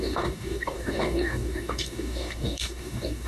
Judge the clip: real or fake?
fake